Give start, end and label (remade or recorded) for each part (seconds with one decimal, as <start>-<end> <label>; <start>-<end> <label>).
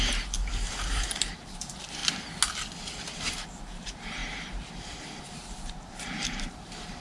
0.0-2.0 remade; 2.0-3.1 recorded; 3.1-7.0 remade